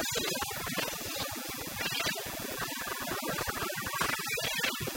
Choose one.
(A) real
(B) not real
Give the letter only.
A